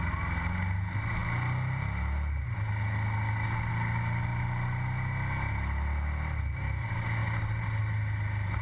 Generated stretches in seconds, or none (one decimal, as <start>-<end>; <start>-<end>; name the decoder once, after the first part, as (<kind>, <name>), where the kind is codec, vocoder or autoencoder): none